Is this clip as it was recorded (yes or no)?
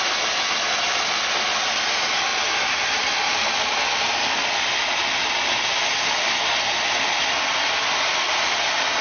yes